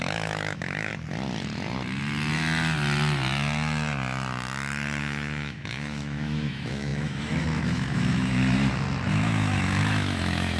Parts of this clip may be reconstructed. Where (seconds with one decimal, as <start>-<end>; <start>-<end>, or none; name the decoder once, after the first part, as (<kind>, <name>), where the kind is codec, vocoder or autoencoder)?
0.0-0.9 (autoencoder, DAC-VAE); 5.0-8.4; 9.1-10.6